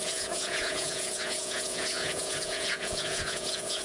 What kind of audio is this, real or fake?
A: fake